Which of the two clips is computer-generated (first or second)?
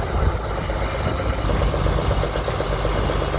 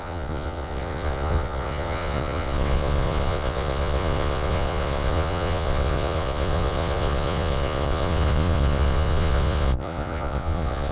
second